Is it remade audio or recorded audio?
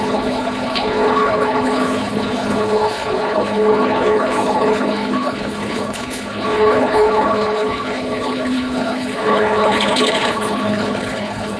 remade